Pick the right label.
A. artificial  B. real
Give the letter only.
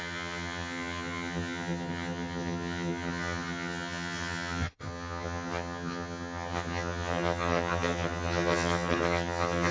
A